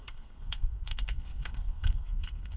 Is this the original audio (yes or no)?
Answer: no